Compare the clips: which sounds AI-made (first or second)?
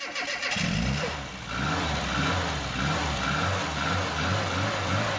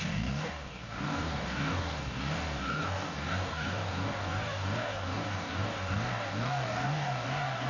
second